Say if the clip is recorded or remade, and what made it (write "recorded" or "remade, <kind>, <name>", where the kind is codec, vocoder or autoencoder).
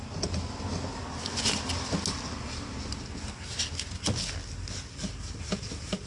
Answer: recorded